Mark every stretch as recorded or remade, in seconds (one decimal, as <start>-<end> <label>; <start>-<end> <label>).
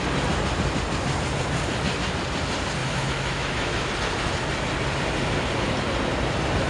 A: 0.0-2.8 recorded; 2.8-3.9 remade; 3.9-6.7 recorded